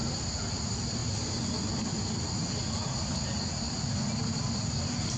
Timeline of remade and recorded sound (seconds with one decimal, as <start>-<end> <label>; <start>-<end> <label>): 0.0-5.2 recorded